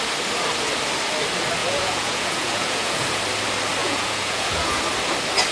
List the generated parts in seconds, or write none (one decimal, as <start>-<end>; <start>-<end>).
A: 1.6-3.2; 3.8-4.8